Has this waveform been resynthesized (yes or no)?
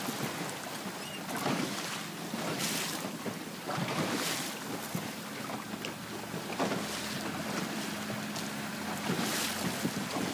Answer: no